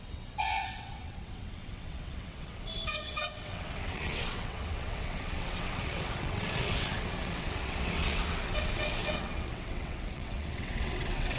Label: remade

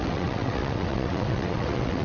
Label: remade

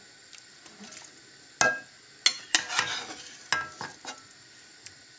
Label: recorded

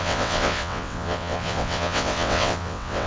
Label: remade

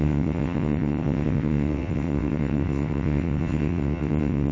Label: remade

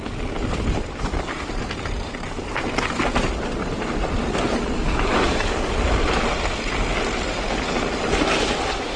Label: recorded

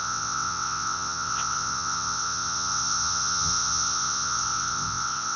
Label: remade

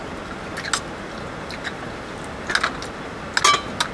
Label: recorded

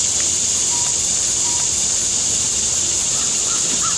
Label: recorded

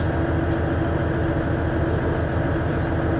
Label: recorded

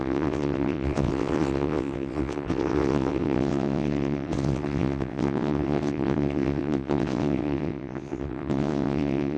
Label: remade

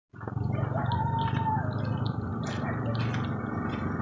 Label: recorded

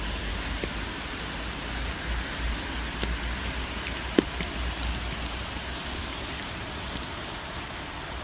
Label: recorded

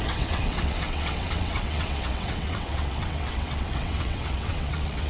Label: remade